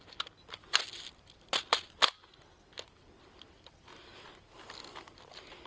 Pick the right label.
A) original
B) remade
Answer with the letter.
A